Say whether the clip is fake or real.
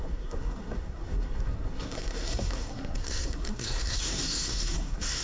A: fake